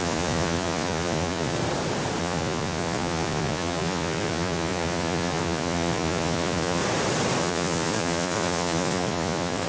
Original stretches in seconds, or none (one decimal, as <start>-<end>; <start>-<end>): 1.6-2.2; 6.8-7.4

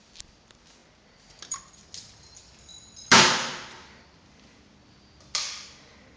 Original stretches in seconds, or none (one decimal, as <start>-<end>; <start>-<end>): 0.0-6.2

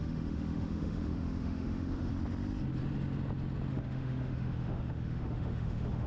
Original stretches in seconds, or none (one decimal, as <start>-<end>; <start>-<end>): 2.1-3.7

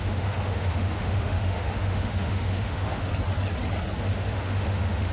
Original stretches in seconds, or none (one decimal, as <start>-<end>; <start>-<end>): 3.1-4.0

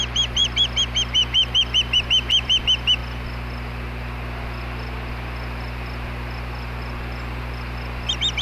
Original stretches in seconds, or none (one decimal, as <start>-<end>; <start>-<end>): 0.0-0.4; 2.6-8.4